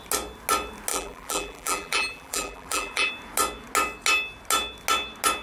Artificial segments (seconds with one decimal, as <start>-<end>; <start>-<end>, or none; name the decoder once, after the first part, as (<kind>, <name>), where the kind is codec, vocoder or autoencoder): 0.9-3.1 (vocoder, BigVGAN v2)